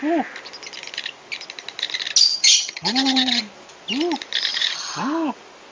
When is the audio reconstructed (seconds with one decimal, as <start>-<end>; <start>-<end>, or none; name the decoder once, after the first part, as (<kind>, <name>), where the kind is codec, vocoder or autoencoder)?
2.3-3.4 (vocoder, HiFi-GAN); 4.5-5.0